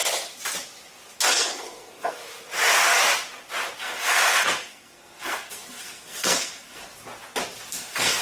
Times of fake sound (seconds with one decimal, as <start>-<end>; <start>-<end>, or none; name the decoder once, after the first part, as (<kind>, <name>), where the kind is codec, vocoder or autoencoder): 1.3-2.2 (codec, SNAC); 3.8-6.9; 7.7-8.2